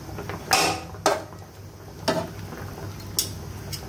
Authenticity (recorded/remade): recorded